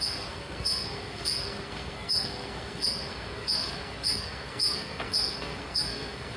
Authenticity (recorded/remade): remade